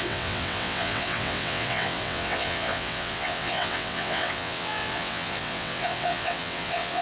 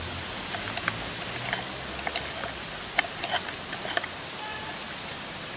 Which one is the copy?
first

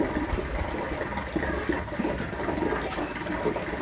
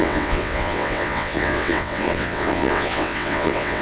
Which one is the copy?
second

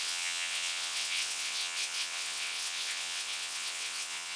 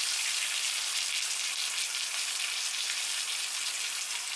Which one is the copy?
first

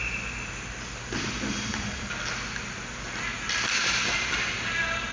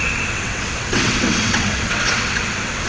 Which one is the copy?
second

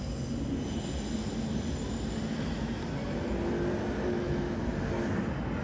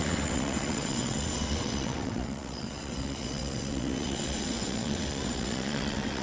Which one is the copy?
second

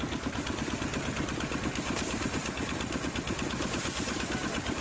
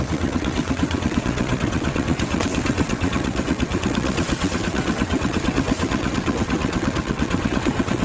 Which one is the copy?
second